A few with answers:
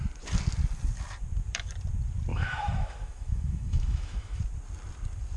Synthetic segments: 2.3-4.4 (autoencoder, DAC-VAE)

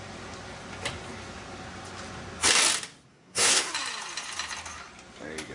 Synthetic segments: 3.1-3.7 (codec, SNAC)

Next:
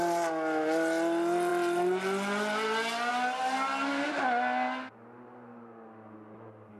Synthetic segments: none

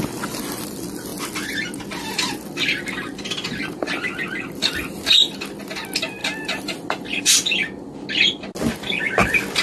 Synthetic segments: none

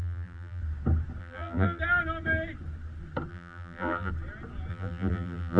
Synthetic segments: 0.0-0.6 (vocoder, BigVGAN v2); 1.2-1.8; 3.3-4.1; 4.7-5.6